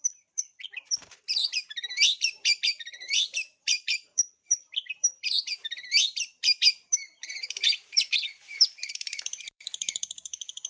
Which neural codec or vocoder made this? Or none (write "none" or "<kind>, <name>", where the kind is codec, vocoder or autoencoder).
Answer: vocoder, BigVGAN v2